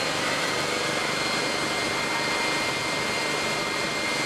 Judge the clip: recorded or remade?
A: recorded